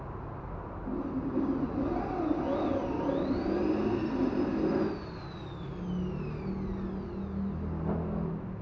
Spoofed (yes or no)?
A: no